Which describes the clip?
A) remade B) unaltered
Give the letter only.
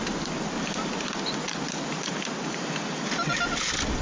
B